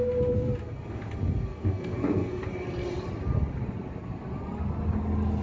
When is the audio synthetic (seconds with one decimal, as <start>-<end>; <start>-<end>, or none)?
1.5-2.4